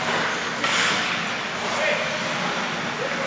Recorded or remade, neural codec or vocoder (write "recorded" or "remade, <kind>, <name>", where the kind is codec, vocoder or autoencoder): recorded